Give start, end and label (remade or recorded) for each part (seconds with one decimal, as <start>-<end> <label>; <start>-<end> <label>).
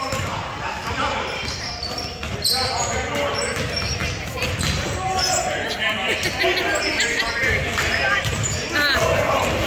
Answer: 0.0-4.0 remade; 4.0-6.7 recorded; 6.7-9.7 remade